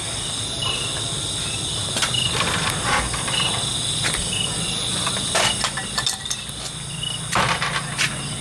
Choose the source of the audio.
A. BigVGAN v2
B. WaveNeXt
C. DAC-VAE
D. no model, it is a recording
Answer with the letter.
D